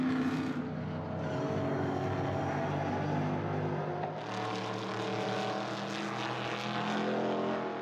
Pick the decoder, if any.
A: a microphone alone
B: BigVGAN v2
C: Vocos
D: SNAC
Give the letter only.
A